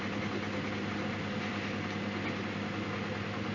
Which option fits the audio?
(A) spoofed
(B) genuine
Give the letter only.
B